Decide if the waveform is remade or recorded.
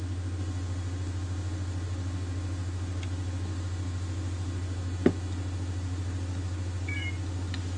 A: recorded